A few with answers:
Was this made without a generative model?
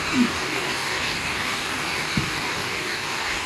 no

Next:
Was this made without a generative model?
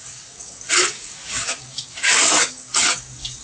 no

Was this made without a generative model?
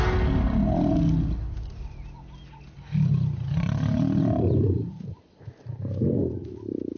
yes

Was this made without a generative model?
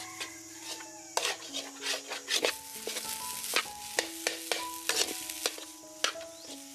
yes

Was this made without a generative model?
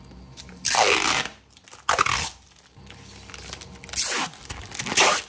yes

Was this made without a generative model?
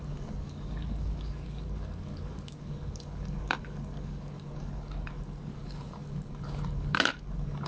no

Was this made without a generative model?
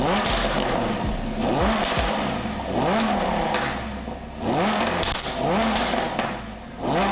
yes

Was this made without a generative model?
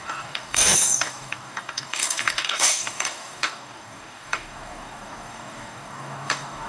no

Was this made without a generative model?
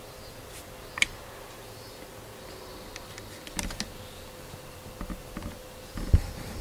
yes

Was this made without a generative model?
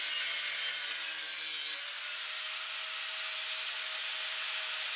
yes